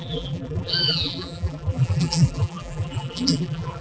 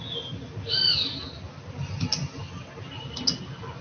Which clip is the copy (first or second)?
first